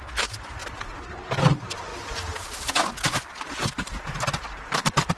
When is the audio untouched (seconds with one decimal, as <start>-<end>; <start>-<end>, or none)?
1.9-3.4